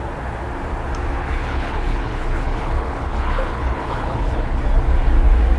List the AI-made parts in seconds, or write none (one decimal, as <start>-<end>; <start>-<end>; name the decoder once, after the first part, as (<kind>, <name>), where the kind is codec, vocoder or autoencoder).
1.2-4.6 (codec, HILCodec)